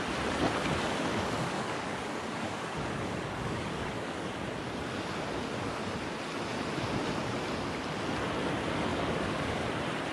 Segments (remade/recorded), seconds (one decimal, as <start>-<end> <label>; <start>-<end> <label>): 0.0-1.1 recorded; 1.1-4.3 remade; 4.3-8.9 recorded; 8.9-9.7 remade; 9.7-10.1 recorded